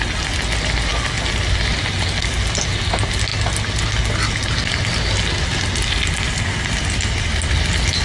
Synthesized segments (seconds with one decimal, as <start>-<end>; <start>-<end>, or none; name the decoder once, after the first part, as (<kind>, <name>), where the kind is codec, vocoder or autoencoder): none